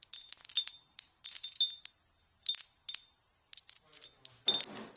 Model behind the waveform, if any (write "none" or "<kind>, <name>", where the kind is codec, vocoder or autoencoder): none